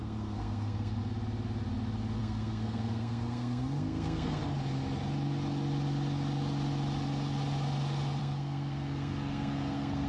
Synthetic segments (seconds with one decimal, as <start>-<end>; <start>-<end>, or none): 0.0-1.0; 2.2-4.4; 8.2-10.1